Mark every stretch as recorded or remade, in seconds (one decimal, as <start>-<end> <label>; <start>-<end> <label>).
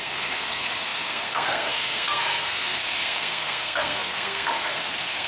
0.0-5.3 remade